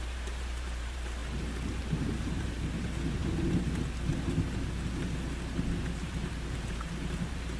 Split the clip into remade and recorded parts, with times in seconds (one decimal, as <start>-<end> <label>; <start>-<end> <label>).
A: 0.0-1.2 remade; 1.2-1.8 recorded; 1.8-3.2 remade; 3.2-6.0 recorded; 6.0-7.6 remade